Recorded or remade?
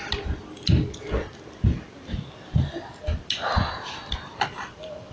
recorded